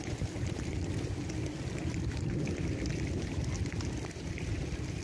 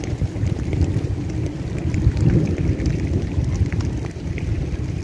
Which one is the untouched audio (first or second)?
first